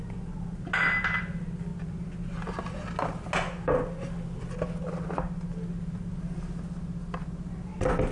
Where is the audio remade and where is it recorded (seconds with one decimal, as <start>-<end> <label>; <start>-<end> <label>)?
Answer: 0.0-8.1 recorded